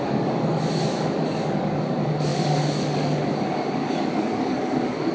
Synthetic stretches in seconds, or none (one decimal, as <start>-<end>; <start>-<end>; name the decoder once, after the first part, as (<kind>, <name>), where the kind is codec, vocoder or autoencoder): 0.0-5.1 (codec, DAC)